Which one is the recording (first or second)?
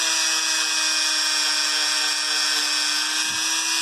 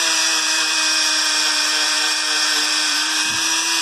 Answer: first